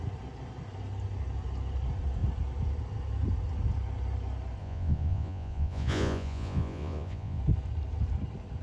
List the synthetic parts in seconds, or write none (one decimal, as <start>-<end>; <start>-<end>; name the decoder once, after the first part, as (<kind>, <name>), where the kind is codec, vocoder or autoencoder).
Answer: 4.6-7.4 (vocoder, Vocos)

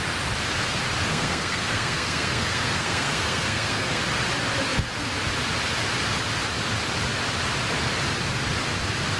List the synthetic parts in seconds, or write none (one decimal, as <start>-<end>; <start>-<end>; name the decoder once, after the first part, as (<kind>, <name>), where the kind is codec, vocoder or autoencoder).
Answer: 1.1-4.0 (codec, SNAC)

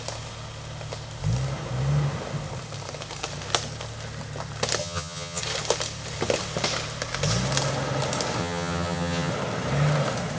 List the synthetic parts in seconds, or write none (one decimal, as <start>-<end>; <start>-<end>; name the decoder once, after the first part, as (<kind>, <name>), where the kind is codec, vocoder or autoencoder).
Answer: 4.8-5.4 (vocoder, HiFi-GAN); 8.4-9.3

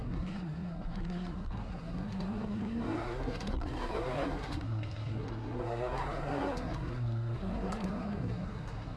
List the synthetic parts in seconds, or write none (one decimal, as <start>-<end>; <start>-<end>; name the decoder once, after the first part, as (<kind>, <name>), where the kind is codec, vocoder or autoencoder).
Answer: 0.0-9.0 (codec, SNAC)

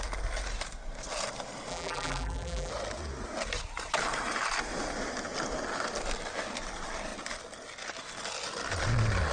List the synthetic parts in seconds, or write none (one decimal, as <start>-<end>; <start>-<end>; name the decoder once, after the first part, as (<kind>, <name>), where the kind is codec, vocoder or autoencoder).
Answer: 1.7-2.7 (vocoder, BigVGAN v2)